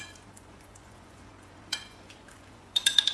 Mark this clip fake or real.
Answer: fake